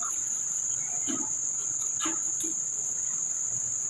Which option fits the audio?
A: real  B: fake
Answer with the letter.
A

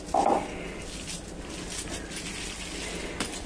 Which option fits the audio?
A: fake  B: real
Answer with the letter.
B